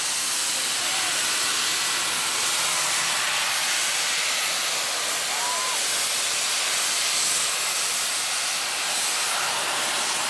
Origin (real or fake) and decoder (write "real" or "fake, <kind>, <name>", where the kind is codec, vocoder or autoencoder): real